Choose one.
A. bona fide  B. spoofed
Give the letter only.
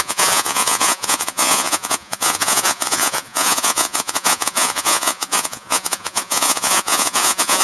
B